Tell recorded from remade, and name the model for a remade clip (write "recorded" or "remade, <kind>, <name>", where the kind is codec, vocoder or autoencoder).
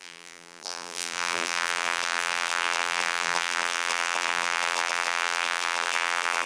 remade, vocoder, BigVGAN v2